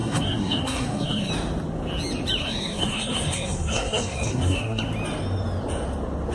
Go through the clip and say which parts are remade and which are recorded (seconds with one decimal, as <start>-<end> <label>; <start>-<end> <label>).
0.0-1.3 remade; 1.3-2.4 recorded; 2.4-4.8 remade; 4.8-6.3 recorded

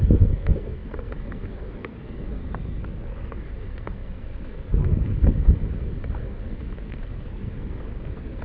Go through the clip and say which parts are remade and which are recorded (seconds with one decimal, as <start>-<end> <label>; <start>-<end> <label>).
0.0-8.4 remade

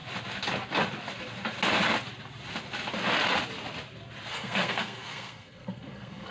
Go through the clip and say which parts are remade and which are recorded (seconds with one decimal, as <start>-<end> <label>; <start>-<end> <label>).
0.0-4.3 recorded; 4.3-6.3 remade

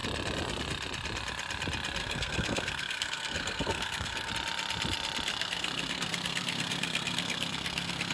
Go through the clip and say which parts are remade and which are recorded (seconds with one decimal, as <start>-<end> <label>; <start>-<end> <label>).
0.0-2.0 recorded; 2.0-4.3 remade; 4.3-5.3 recorded; 5.3-8.1 remade

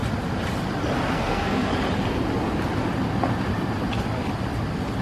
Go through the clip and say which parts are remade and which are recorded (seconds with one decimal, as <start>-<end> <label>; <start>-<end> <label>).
0.0-1.1 recorded; 1.1-1.7 remade; 1.7-5.0 recorded

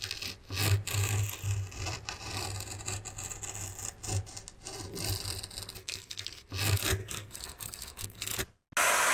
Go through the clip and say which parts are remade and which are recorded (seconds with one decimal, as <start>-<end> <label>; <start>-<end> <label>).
0.0-5.8 recorded; 5.8-6.5 remade; 6.5-7.0 recorded; 7.0-8.4 remade; 8.4-9.1 recorded

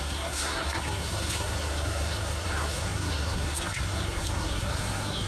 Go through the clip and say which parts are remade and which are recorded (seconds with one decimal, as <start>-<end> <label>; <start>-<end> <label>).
0.0-5.3 remade

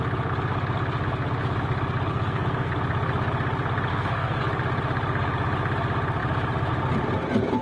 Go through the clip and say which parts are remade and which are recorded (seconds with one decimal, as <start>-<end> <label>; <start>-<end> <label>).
0.0-2.1 recorded; 2.1-2.7 remade; 2.7-3.9 recorded; 3.9-4.4 remade; 4.4-7.6 recorded